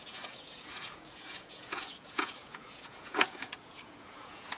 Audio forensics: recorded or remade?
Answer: remade